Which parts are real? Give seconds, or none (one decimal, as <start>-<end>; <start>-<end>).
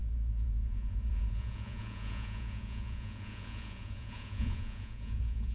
none